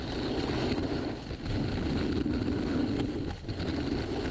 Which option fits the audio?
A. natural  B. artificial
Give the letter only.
A